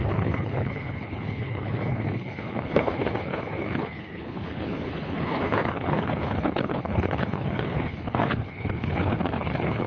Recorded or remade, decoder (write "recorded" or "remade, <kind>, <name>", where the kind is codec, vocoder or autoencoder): remade, codec, HILCodec